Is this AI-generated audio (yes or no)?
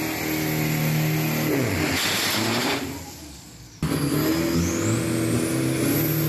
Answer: no